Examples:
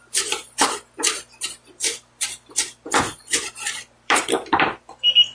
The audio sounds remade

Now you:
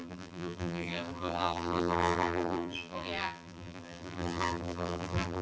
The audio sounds remade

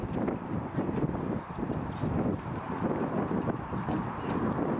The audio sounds recorded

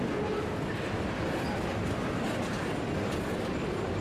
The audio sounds recorded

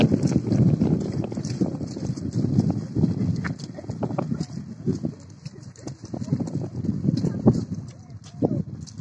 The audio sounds recorded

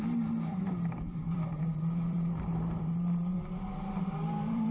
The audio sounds remade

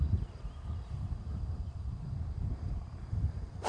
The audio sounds remade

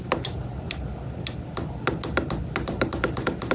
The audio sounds recorded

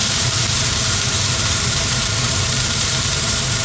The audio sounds remade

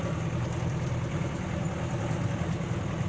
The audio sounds remade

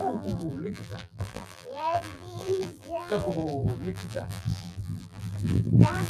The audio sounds remade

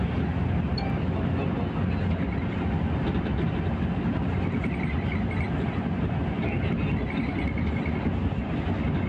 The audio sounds recorded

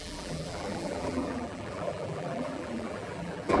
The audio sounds remade